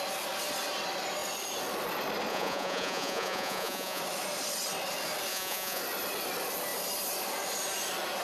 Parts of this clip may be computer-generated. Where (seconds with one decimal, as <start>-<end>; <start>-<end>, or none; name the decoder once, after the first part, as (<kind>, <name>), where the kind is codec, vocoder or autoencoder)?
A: 2.3-4.0 (vocoder, Vocos); 5.3-5.8

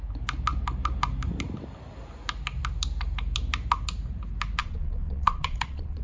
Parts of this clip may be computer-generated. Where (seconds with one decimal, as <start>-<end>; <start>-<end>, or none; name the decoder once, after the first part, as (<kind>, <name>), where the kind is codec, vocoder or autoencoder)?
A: 4.6-6.0 (vocoder, Vocos)

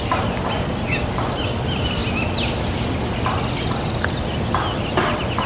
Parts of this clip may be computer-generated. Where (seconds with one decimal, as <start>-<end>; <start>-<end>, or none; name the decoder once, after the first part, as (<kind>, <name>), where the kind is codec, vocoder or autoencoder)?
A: none